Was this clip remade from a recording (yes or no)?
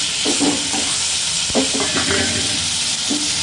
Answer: no